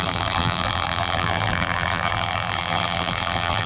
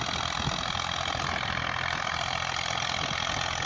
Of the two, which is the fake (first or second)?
first